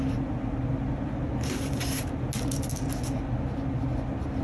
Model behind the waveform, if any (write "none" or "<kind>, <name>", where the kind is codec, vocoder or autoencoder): none